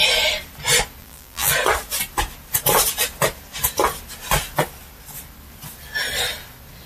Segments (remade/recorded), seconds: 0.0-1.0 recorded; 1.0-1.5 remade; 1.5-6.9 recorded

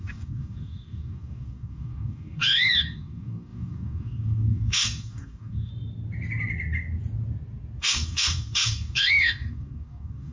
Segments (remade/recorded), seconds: 0.0-5.7 remade; 5.7-7.8 recorded; 7.8-10.3 remade

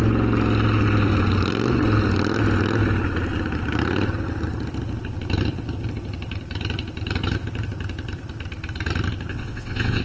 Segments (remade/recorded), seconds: 0.0-9.3 recorded; 9.3-10.0 remade